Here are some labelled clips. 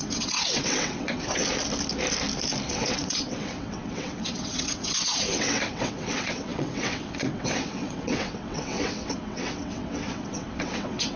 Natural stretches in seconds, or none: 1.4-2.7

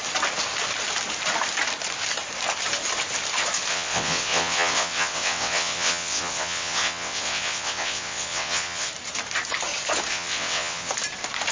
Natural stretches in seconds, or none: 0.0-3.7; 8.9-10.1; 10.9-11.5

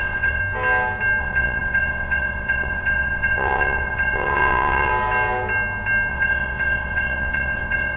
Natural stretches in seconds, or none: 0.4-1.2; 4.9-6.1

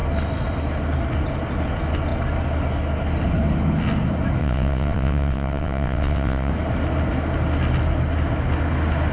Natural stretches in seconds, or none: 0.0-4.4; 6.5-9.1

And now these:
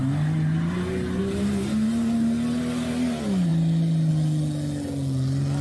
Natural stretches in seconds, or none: 0.0-5.6